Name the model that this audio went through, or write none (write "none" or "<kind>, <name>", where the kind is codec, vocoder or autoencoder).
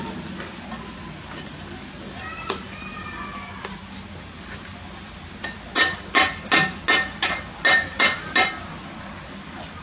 none